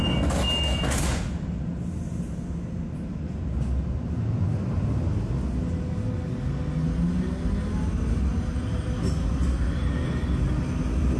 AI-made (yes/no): no